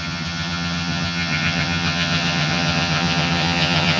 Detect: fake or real fake